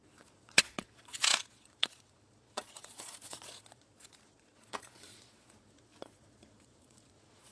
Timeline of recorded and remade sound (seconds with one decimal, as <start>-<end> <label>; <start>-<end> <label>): 0.0-7.5 remade